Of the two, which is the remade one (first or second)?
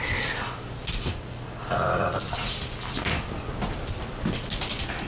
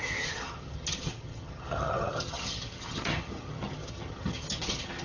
second